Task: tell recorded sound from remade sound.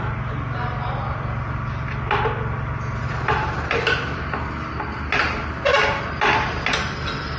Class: recorded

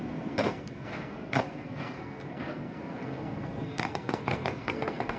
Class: remade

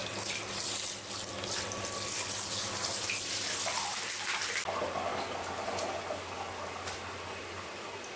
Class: recorded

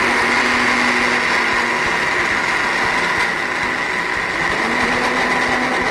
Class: recorded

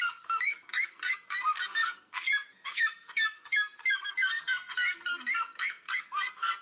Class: remade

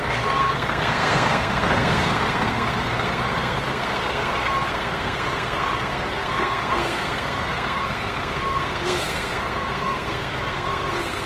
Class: remade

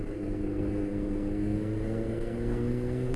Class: remade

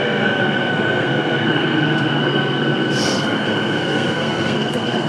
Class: remade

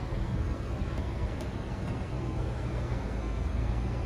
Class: remade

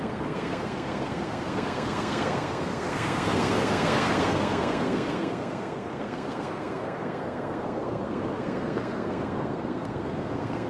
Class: remade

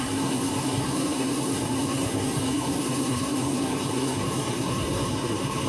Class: remade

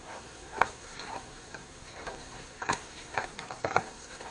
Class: remade